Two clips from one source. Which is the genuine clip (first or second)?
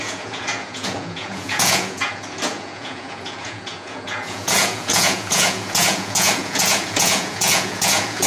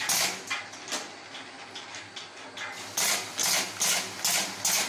second